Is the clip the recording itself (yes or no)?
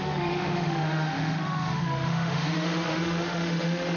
no